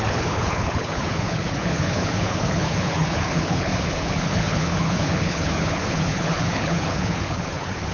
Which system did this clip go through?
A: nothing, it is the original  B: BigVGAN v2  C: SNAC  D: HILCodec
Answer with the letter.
D